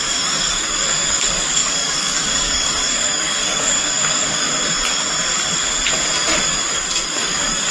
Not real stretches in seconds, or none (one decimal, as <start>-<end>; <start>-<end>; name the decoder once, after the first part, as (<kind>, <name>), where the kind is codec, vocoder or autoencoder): 0.0-4.5 (codec, DAC); 6.5-7.7